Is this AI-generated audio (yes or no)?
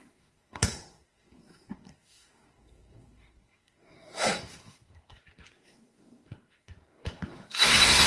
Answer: yes